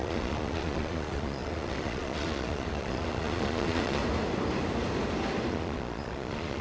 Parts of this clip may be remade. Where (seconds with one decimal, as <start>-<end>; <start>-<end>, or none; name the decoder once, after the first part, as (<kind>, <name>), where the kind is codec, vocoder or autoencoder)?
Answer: 0.0-4.0 (vocoder, Vocos); 5.5-6.6